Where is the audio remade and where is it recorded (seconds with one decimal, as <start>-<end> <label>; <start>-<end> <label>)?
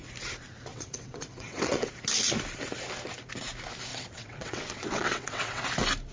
0.0-0.7 recorded; 0.7-1.9 remade; 1.9-3.9 recorded; 3.9-5.6 remade; 5.6-6.1 recorded